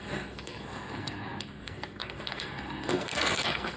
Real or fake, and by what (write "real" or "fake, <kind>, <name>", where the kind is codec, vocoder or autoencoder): fake, codec, SNAC